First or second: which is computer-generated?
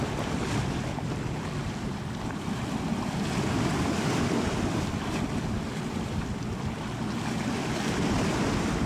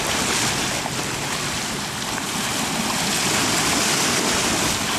first